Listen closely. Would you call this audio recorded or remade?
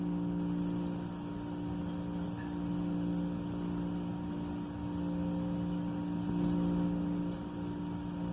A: recorded